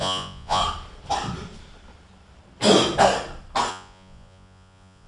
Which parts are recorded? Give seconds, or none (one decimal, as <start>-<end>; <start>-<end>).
0.6-3.7